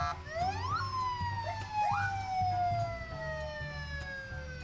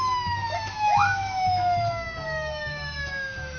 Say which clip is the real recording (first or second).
first